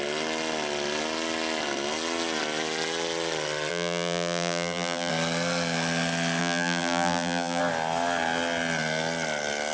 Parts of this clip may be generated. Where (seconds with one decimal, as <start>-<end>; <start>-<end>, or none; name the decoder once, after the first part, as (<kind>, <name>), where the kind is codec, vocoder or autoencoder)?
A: 3.7-5.1 (vocoder, BigVGAN v2); 6.4-7.6